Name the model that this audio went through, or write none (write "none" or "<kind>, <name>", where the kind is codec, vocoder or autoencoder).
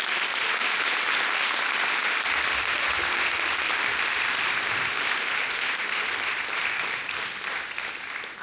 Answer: none